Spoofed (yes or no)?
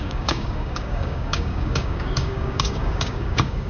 yes